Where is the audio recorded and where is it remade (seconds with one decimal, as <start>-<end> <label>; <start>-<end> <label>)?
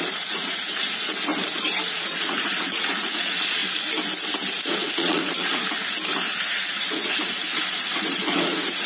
0.0-1.3 remade; 1.3-1.9 recorded; 1.9-3.6 remade; 3.6-4.5 recorded; 4.5-5.6 remade; 5.6-6.4 recorded; 6.4-8.9 remade